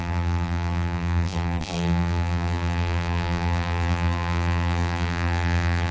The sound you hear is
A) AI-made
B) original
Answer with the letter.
A